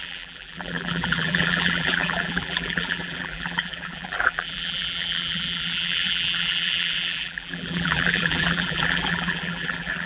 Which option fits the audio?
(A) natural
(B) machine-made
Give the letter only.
B